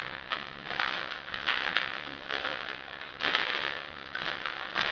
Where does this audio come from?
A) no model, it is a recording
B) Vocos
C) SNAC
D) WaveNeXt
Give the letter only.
D